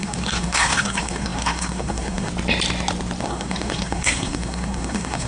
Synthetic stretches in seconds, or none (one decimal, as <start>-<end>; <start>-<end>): 0.0-2.3; 3.2-5.3